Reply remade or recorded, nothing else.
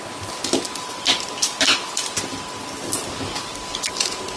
recorded